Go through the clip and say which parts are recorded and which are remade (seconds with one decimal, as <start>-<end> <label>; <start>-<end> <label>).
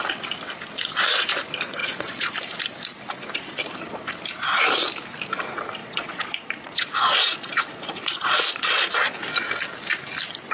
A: 0.0-1.8 recorded; 1.8-2.3 remade; 2.3-5.8 recorded; 5.8-9.1 remade; 9.1-10.5 recorded